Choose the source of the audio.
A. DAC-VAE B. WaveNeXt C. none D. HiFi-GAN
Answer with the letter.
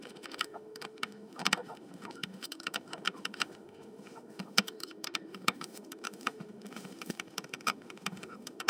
A